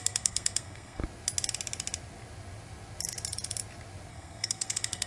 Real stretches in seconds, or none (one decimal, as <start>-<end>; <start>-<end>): 1.0-4.1